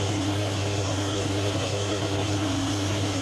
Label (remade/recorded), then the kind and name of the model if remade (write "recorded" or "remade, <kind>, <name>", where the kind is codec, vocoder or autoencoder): remade, codec, SNAC